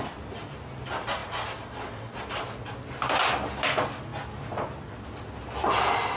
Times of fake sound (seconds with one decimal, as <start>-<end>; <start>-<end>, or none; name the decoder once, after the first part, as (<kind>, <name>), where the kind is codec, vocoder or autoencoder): none